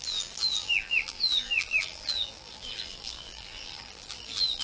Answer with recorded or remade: remade